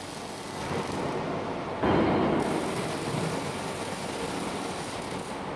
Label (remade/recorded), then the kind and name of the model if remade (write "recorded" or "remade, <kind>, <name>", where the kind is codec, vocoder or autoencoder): recorded